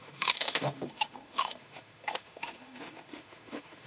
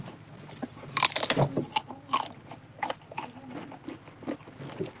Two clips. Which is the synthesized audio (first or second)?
first